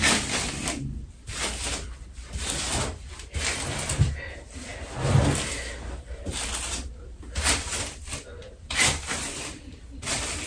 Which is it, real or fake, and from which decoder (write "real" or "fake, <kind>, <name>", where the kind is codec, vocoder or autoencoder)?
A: fake, vocoder, BigVGAN v2